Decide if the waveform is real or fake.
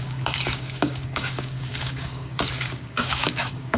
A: fake